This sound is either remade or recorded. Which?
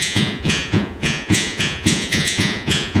remade